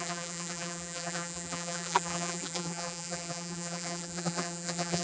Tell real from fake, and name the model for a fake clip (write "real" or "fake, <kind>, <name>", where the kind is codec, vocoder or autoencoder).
fake, vocoder, BigVGAN v2